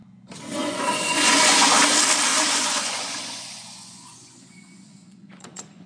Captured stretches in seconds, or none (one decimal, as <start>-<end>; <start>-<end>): 0.0-0.6; 1.7-2.3